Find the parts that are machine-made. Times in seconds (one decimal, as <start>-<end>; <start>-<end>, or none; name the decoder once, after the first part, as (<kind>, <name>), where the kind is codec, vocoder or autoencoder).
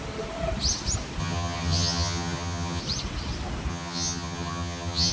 1.2-2.8 (vocoder, HiFi-GAN); 3.7-5.1